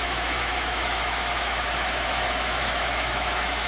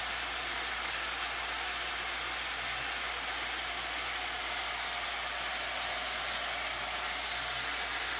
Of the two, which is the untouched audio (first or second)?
second